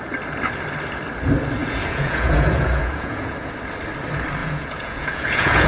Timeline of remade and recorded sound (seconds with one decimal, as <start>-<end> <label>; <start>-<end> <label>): 0.0-1.6 recorded; 1.6-3.5 remade; 3.5-4.4 recorded; 4.4-5.7 remade